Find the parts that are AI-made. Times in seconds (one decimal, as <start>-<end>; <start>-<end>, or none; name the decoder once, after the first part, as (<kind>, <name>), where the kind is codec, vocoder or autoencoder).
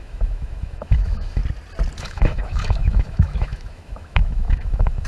0.0-1.4 (autoencoder, DAC-VAE); 2.0-5.1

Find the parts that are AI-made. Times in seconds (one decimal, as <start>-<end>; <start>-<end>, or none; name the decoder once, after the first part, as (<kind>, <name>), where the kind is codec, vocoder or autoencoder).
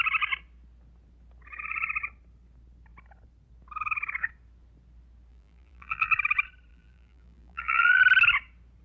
5.3-6.1 (vocoder, BigVGAN v2); 6.7-8.0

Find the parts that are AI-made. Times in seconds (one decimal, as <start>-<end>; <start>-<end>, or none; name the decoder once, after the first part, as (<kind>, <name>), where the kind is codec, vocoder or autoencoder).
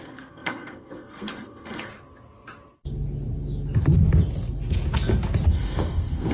0.0-1.9 (codec, SNAC); 5.5-6.3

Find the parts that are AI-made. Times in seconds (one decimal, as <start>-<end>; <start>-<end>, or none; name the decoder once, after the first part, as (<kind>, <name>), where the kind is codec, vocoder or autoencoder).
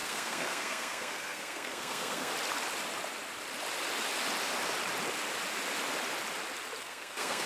0.0-2.3 (codec, SNAC); 6.8-7.5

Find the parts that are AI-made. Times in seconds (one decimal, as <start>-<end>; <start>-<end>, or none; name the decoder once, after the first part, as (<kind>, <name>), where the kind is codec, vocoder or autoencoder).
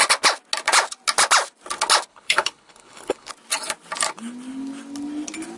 2.1-3.3 (codec, HILCodec)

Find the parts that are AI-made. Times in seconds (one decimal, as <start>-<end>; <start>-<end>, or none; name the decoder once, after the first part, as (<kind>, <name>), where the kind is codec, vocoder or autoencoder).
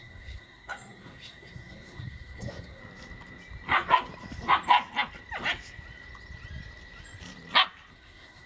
0.0-2.8 (codec, SNAC); 7.9-8.5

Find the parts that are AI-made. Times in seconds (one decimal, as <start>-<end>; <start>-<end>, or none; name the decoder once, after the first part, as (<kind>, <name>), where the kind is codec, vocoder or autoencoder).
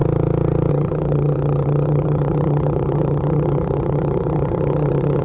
0.7-5.2 (vocoder, HiFi-GAN)